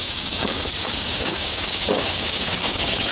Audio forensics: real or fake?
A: fake